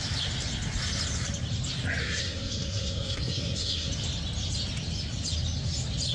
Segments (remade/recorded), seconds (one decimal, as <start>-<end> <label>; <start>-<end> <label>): 0.0-2.0 recorded; 2.0-3.9 remade; 3.9-6.1 recorded